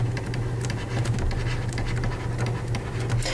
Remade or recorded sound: recorded